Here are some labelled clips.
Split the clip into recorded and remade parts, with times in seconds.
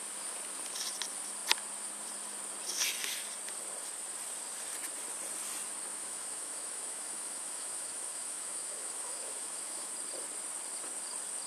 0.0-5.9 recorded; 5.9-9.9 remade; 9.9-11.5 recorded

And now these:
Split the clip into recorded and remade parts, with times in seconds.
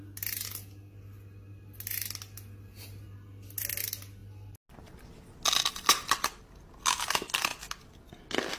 0.0-8.6 recorded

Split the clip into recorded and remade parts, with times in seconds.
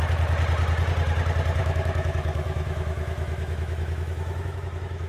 0.0-1.6 recorded; 1.6-5.1 remade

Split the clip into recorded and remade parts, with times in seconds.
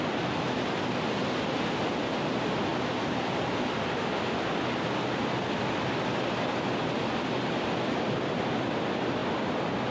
0.0-9.9 recorded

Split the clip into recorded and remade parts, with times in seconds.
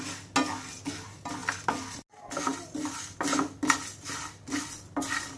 0.0-5.4 recorded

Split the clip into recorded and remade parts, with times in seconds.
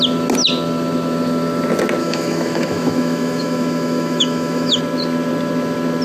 0.0-2.0 recorded; 2.0-4.8 remade; 4.8-6.0 recorded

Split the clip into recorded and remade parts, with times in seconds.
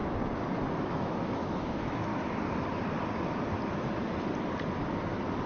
0.0-0.7 recorded; 0.7-2.1 remade; 2.1-5.5 recorded